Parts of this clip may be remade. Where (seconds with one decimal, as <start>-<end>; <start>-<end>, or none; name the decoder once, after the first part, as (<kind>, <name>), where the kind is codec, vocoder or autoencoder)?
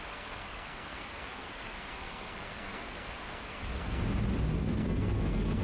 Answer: 0.0-4.0 (codec, SNAC); 4.6-5.6